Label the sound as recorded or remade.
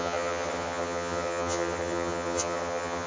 remade